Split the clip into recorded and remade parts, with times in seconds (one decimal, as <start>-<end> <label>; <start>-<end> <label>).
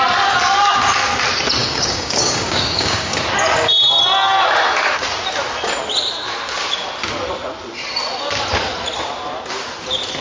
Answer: 0.0-1.6 recorded; 1.6-3.2 remade; 3.2-10.2 recorded